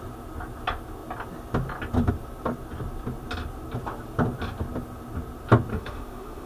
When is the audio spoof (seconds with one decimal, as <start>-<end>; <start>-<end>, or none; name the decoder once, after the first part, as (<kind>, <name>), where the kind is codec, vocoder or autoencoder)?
5.7-6.5 (autoencoder, DAC-VAE)